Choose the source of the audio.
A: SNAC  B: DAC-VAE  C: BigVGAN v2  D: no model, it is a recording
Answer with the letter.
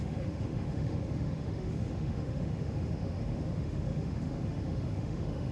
B